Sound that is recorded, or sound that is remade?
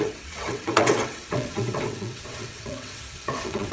remade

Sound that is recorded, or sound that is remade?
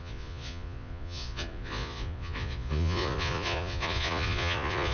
remade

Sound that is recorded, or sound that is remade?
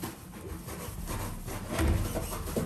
recorded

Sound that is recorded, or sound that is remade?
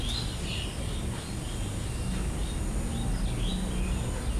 recorded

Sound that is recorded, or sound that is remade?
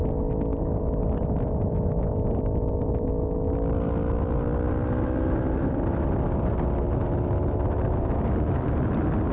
recorded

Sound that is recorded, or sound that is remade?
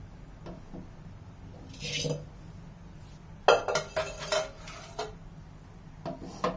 recorded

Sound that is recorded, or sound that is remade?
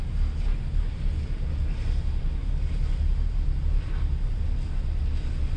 recorded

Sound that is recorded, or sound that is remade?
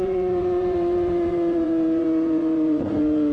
remade